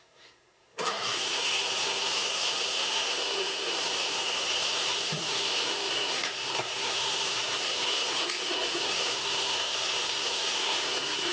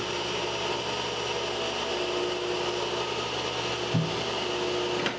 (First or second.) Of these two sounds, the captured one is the second